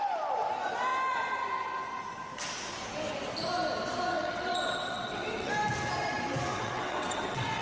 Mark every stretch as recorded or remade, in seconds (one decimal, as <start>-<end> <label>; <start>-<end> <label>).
0.0-4.1 recorded; 4.1-5.5 remade; 5.5-6.5 recorded; 6.5-7.6 remade